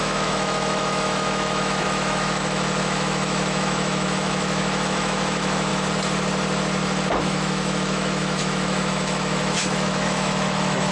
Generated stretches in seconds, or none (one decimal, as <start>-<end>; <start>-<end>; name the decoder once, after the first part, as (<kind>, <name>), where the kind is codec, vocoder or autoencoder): 0.0-5.7 (autoencoder, DAC-VAE); 7.2-10.9